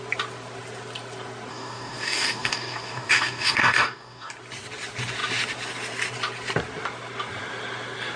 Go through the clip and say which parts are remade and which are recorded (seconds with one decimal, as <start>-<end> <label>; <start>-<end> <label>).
0.0-1.5 recorded; 1.5-4.3 remade; 4.3-8.2 recorded